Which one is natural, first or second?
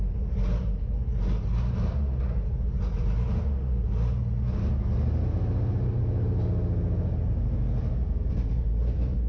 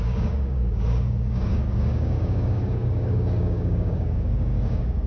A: first